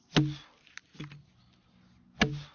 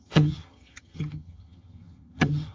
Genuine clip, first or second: first